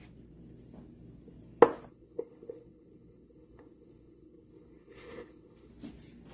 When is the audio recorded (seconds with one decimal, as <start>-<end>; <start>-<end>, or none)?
0.0-1.9; 5.7-6.3